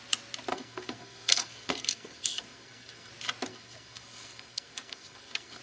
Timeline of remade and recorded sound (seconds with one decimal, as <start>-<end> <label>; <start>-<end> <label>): 0.0-0.5 recorded; 0.5-3.1 remade; 3.1-3.5 recorded; 3.5-5.6 remade